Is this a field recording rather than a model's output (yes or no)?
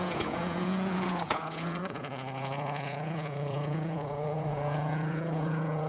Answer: no